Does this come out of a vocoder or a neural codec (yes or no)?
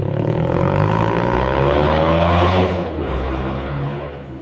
yes